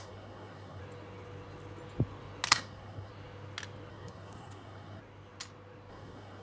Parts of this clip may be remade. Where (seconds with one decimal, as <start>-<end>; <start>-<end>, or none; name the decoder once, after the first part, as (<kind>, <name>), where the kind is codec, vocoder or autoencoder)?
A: 0.0-0.8 (codec, SNAC); 2.5-3.1; 3.9-5.0; 5.9-6.4